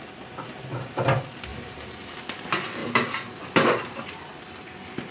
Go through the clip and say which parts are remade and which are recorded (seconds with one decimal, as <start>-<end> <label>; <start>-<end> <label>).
0.0-5.1 recorded